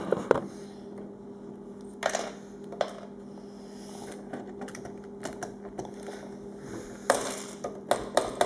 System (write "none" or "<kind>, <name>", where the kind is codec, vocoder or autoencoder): none